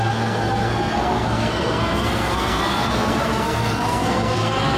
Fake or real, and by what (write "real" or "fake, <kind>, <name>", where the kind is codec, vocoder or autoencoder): fake, codec, SNAC